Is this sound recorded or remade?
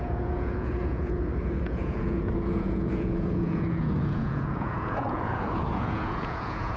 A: remade